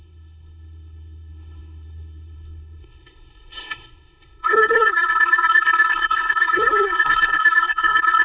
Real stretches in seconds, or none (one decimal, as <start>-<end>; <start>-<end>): none